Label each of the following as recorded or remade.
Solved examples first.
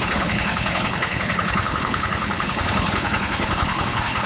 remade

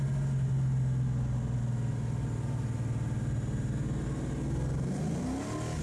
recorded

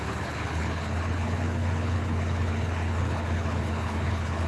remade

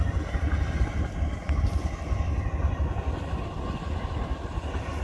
recorded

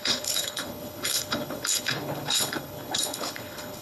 remade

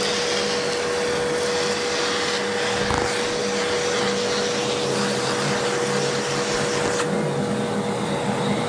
recorded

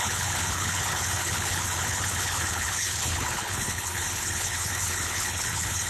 remade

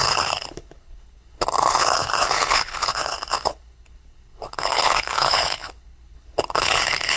remade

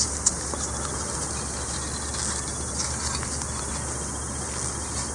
recorded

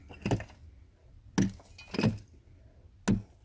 recorded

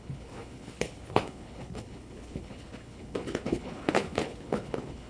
remade